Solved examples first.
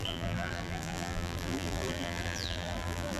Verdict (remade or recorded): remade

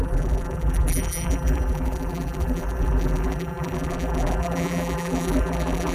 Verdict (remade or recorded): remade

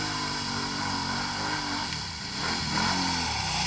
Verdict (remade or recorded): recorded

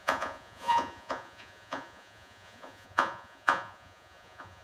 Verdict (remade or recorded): remade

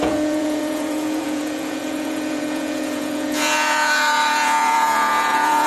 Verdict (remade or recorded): remade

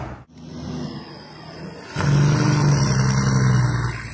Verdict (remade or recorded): recorded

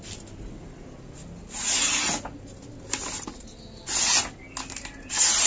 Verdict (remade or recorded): recorded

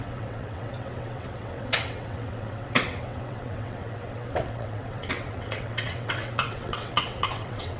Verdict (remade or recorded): remade